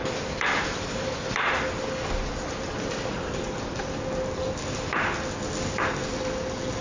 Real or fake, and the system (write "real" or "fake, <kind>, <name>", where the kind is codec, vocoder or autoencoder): real